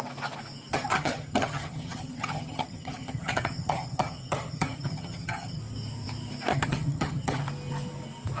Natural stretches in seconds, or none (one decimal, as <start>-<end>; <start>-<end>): 0.0-0.7; 5.6-6.5; 7.4-8.4